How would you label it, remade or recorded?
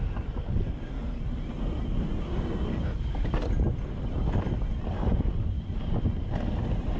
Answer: recorded